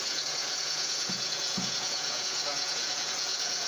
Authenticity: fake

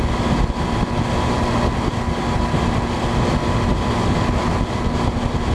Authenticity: real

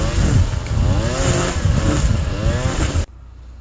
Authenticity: real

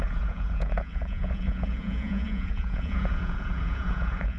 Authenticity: fake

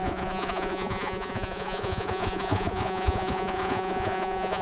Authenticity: fake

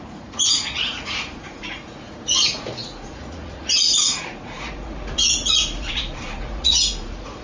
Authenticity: fake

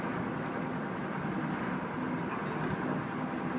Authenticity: real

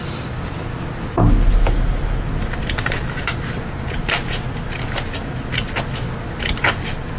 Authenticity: real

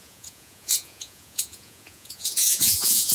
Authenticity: fake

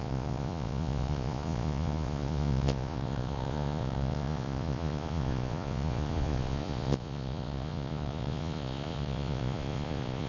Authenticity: fake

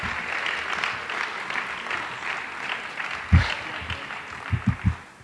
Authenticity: real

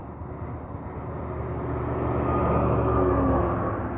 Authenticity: real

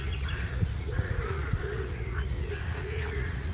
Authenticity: fake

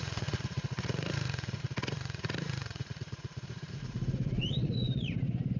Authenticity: fake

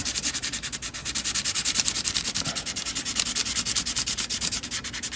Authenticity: real